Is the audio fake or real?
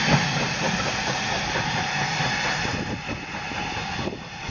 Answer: real